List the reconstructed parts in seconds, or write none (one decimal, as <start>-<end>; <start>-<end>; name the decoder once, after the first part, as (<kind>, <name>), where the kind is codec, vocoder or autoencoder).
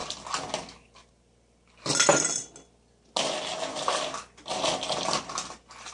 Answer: none